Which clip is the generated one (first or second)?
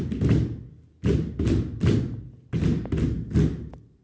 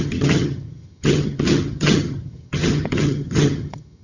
second